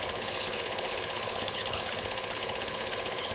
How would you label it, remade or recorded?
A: remade